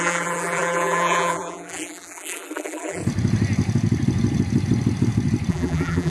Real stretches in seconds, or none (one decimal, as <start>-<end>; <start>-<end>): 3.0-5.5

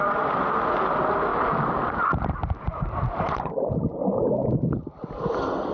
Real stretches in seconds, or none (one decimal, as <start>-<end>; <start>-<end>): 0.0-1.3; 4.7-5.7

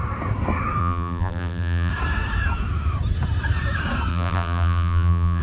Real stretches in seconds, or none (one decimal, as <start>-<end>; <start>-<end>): 0.0-0.8; 1.9-4.1